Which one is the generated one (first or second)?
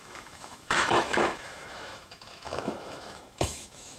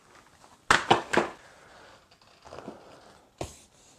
first